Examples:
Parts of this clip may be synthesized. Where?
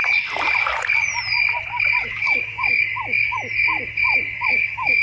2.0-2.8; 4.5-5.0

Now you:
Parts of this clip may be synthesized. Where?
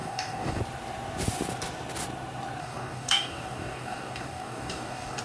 0.0-0.6; 2.6-5.2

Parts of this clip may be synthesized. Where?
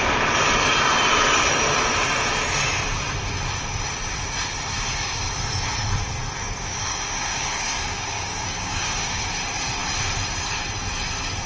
6.4-9.2